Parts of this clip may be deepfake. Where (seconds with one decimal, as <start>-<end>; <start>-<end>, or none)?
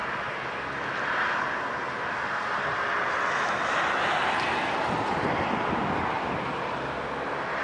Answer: none